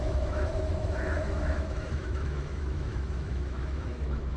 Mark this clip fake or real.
fake